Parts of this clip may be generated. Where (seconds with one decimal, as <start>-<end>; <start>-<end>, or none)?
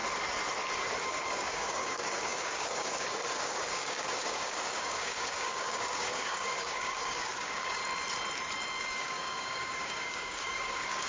1.0-7.8; 8.8-11.1